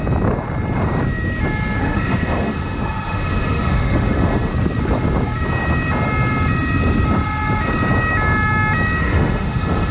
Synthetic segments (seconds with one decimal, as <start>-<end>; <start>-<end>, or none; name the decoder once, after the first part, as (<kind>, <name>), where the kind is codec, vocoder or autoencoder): 1.8-4.5 (autoencoder, DAC-VAE); 9.0-9.9